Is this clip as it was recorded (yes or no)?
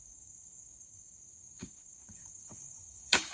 no